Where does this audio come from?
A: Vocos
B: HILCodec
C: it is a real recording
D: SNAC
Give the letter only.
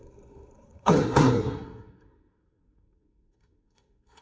D